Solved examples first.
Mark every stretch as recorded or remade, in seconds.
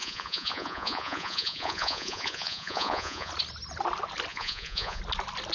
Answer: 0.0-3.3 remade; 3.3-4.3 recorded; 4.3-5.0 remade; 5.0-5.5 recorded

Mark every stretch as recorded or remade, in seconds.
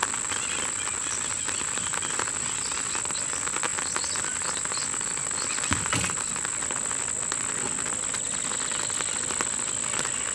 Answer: 0.0-10.3 recorded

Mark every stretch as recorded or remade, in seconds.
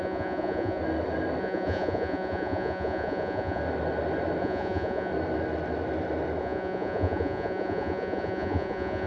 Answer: 0.0-0.8 remade; 0.8-1.4 recorded; 1.4-3.6 remade; 3.6-4.4 recorded; 4.4-5.1 remade; 5.1-6.4 recorded; 6.4-9.1 remade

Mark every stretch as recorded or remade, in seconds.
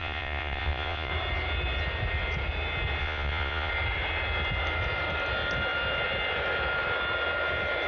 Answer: 0.0-1.1 remade; 1.1-3.0 recorded; 3.0-3.7 remade; 3.7-7.9 recorded